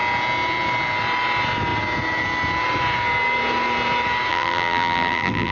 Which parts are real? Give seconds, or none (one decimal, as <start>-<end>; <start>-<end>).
0.0-4.3